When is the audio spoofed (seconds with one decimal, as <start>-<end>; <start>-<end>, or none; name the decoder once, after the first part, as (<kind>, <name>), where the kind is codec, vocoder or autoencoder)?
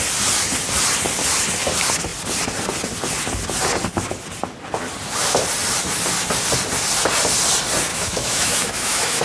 7.9-9.2 (autoencoder, DAC-VAE)